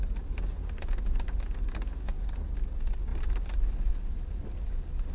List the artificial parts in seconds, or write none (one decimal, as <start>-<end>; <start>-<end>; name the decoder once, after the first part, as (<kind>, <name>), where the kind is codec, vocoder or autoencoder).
none

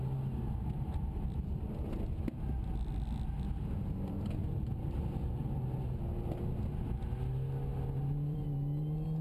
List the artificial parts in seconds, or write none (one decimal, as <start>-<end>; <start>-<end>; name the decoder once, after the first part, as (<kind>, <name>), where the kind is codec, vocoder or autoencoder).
4.4-5.0 (vocoder, BigVGAN v2); 7.7-9.2

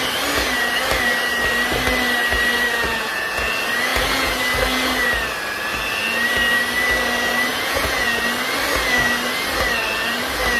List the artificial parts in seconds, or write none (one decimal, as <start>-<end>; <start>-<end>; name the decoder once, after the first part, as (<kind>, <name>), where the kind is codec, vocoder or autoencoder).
2.9-3.5 (vocoder, Vocos); 3.9-4.4; 7.5-8.2

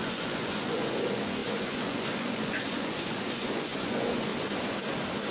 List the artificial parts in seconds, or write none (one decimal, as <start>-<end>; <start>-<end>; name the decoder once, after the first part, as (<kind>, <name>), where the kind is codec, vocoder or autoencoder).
0.0-4.3 (vocoder, Vocos)

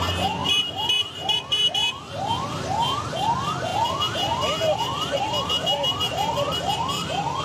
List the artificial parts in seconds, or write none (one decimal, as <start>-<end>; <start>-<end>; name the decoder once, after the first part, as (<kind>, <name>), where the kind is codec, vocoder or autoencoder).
0.4-2.0 (vocoder, BigVGAN v2)

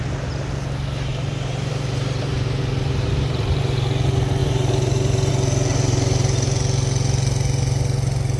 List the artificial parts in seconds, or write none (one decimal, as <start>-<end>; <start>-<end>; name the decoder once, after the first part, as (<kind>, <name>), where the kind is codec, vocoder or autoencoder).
1.1-3.6 (vocoder, BigVGAN v2); 4.4-5.3; 5.7-6.6